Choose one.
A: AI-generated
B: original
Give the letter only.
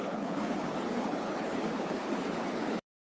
A